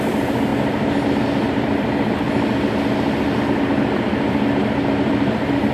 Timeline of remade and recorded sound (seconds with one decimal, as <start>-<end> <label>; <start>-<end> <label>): 0.0-5.7 recorded